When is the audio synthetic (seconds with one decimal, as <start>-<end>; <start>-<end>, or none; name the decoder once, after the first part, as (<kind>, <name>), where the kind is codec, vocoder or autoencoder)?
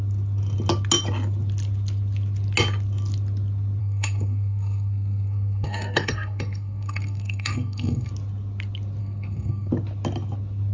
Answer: 3.8-8.1 (codec, SNAC); 9.0-9.7